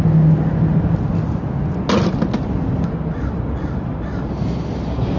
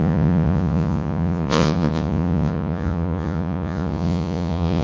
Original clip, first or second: first